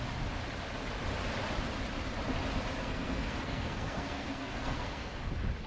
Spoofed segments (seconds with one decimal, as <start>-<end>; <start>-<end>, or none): 2.8-5.3